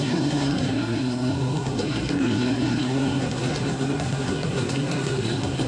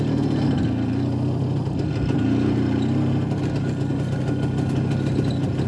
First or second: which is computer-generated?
first